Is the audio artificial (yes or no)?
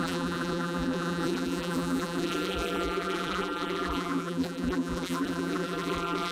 yes